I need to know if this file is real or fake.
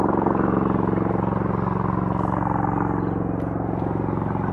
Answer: real